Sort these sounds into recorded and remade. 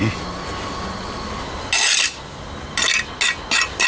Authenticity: recorded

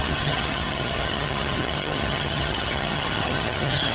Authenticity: remade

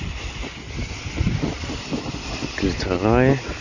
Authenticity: recorded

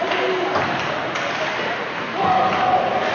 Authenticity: recorded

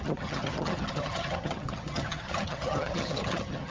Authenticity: remade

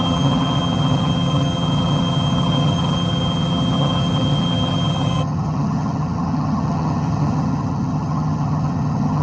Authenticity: remade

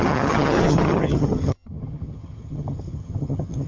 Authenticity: remade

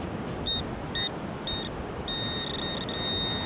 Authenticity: recorded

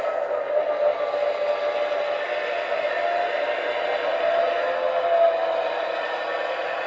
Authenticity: recorded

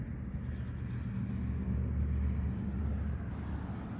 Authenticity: recorded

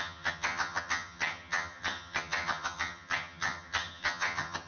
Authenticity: remade